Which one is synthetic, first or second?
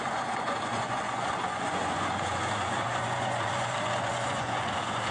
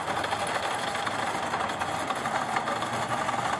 first